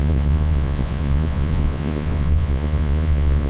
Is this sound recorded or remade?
remade